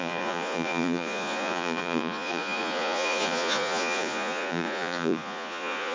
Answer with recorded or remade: remade